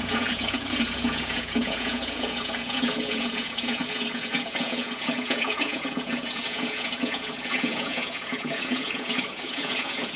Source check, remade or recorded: remade